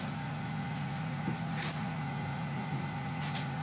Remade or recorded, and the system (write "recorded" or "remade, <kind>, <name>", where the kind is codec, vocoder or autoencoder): remade, vocoder, Vocos